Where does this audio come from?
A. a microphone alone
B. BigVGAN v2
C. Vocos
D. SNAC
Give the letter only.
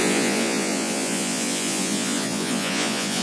C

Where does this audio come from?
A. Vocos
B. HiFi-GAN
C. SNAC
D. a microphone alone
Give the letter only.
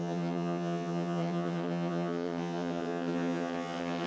B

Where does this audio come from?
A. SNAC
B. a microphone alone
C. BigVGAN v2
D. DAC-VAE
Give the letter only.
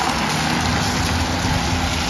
B